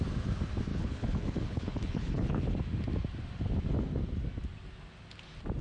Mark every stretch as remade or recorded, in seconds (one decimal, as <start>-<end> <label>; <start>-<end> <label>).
0.0-0.7 recorded; 0.7-2.5 remade; 2.5-5.6 recorded